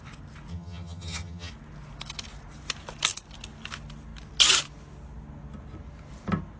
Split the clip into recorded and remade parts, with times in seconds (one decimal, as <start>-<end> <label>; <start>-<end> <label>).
0.0-0.5 recorded; 0.5-1.5 remade; 1.5-6.6 recorded